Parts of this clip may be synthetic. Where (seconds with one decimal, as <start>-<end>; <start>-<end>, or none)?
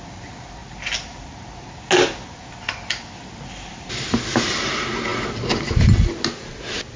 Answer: none